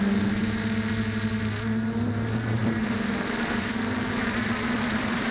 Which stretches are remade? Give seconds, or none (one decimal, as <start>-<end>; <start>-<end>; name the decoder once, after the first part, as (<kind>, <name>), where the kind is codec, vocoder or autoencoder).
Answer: 2.6-3.8 (vocoder, BigVGAN v2); 4.2-5.3